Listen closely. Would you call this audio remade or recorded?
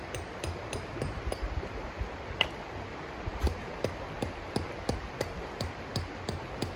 recorded